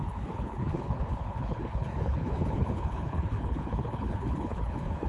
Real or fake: fake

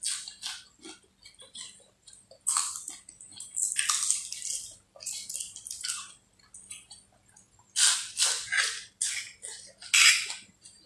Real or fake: real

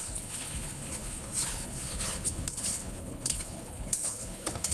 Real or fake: fake